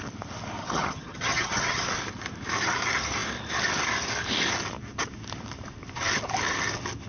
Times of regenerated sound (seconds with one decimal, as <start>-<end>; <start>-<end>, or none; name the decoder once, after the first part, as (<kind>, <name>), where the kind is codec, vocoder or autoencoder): 0.6-1.8 (vocoder, HiFi-GAN)